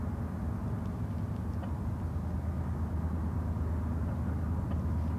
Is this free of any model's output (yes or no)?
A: yes